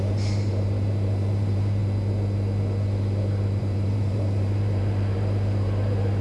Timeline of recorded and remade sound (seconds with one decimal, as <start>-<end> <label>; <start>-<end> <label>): 0.0-1.8 remade; 1.8-3.6 recorded; 3.6-6.2 remade